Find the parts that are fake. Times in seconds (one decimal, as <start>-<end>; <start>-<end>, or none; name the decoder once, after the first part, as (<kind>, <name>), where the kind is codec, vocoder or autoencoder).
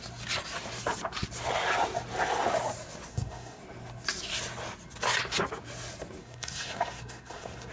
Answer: 3.1-3.6 (codec, SNAC); 6.2-7.7